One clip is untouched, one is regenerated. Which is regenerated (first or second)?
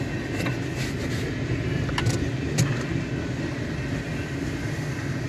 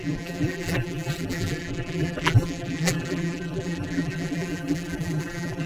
second